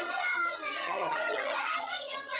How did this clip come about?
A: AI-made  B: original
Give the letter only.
A